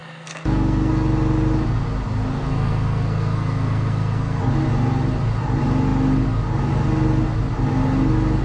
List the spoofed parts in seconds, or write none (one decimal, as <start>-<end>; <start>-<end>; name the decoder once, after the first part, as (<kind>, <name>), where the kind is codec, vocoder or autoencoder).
0.0-0.9 (codec, SNAC); 2.4-4.4